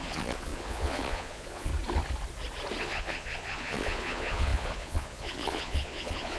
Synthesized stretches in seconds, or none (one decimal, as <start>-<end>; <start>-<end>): 0.0-1.7; 2.8-6.4